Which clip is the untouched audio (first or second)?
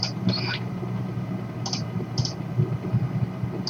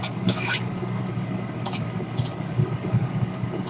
first